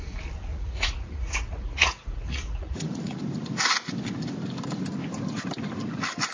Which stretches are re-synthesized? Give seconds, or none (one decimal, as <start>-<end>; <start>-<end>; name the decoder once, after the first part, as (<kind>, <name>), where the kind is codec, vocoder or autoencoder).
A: 0.5-3.2 (vocoder, Vocos)